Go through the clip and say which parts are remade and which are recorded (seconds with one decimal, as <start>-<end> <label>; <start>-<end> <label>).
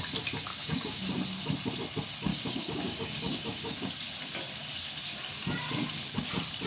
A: 0.0-0.5 recorded; 0.5-1.0 remade; 1.0-2.3 recorded; 2.3-3.9 remade; 3.9-6.7 recorded